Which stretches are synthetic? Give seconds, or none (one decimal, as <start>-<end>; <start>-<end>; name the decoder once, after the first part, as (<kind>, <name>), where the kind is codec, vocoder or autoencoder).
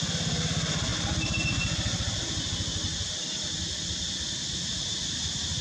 none